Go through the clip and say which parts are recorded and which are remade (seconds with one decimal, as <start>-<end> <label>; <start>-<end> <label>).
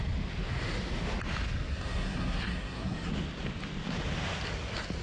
0.0-1.7 recorded; 1.7-3.1 remade; 3.1-5.0 recorded